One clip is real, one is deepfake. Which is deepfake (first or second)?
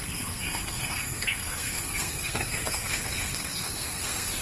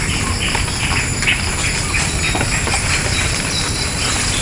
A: first